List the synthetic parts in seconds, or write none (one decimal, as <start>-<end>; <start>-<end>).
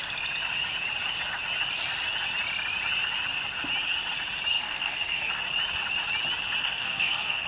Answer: 4.5-5.3; 6.6-7.5